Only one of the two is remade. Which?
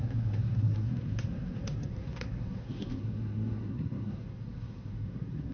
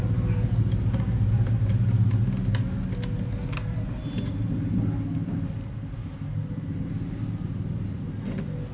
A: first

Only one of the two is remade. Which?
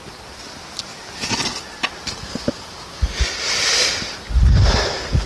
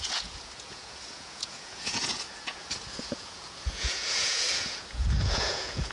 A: second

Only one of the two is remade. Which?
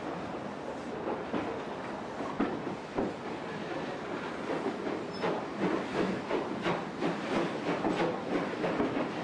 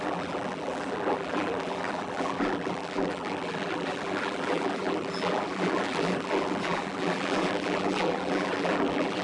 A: second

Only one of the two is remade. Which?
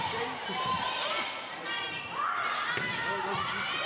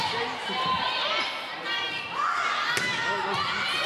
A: first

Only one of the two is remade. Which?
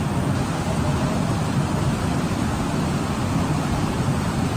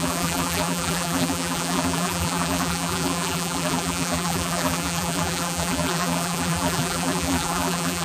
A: second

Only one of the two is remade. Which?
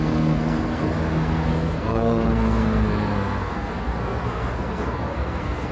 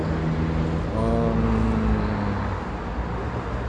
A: first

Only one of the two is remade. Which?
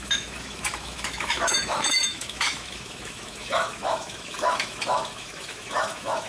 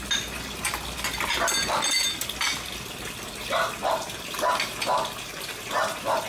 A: first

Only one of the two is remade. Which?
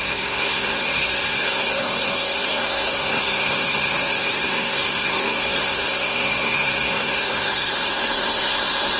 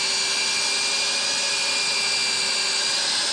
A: first